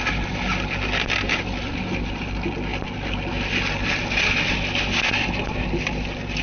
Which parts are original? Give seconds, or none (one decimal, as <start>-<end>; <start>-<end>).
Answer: 0.0-6.4

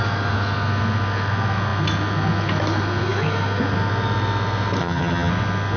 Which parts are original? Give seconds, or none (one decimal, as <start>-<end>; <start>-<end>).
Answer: 0.0-4.8; 5.3-5.8

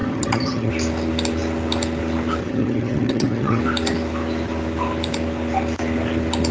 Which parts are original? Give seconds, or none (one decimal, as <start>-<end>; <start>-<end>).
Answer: 0.7-2.4; 3.6-6.5

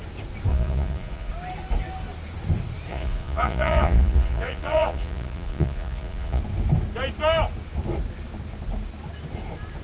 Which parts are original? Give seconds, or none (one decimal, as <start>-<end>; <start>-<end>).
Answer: 0.0-0.5; 1.3-2.9; 6.4-9.8